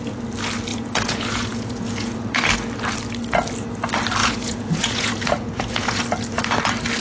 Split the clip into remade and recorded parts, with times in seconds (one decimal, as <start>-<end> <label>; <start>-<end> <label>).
0.0-0.7 recorded; 0.7-2.4 remade; 2.4-4.2 recorded; 4.2-6.0 remade; 6.0-7.0 recorded